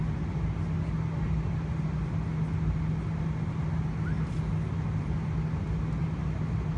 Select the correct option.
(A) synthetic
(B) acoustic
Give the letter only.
B